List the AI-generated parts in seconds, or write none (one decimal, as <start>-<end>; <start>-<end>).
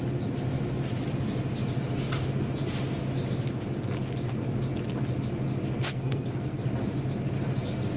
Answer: 5.9-6.6